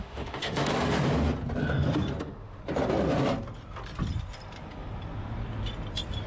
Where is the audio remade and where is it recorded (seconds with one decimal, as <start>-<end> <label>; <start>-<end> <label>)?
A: 0.0-0.7 remade; 0.7-2.2 recorded; 2.2-2.6 remade; 2.6-6.3 recorded